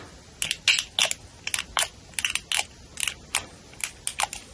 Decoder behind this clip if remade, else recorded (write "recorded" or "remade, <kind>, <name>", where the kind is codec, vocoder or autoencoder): recorded